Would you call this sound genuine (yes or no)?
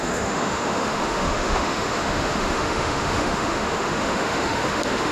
no